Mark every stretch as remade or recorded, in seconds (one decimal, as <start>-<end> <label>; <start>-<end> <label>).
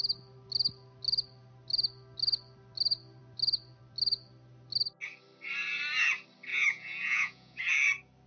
0.0-6.5 recorded; 6.5-7.6 remade; 7.6-8.3 recorded